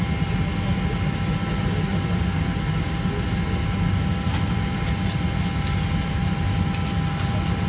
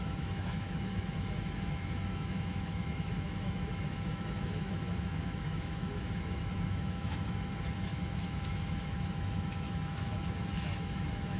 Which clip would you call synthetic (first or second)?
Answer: second